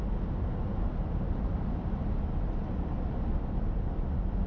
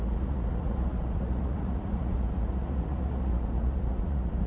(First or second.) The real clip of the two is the first